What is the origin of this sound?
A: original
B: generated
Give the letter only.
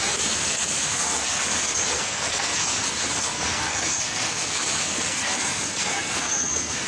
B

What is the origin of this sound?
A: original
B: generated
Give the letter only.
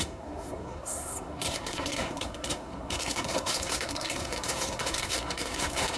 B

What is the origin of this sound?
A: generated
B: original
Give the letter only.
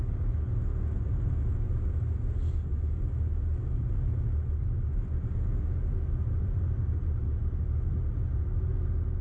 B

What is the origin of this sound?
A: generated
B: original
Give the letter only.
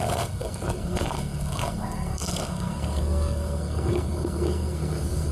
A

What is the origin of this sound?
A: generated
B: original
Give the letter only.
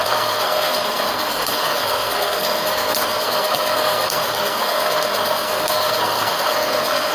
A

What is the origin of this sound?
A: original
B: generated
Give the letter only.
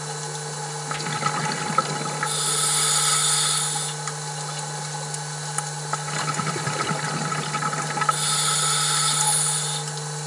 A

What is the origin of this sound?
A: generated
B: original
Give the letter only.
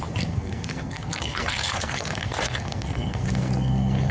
A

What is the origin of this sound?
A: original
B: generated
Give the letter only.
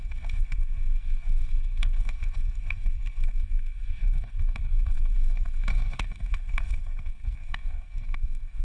B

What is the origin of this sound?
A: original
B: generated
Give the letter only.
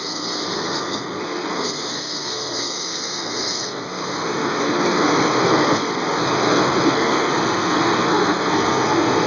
B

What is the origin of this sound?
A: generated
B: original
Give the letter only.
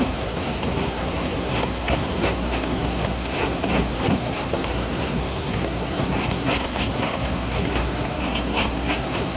A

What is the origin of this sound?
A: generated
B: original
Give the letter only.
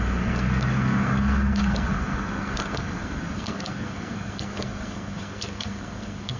A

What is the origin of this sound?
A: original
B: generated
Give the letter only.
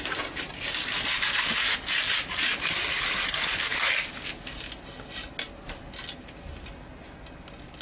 A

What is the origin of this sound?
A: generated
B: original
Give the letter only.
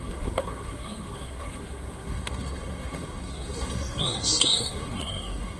A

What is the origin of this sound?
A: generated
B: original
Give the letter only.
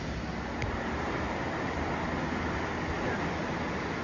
B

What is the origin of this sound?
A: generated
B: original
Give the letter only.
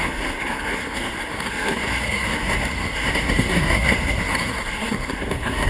A